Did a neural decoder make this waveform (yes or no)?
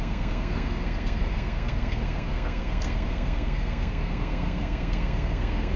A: yes